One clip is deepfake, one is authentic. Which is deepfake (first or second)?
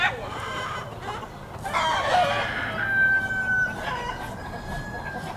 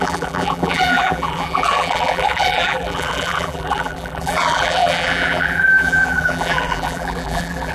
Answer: second